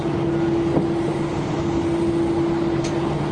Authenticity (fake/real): real